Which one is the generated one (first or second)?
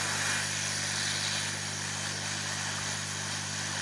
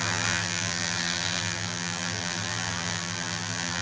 second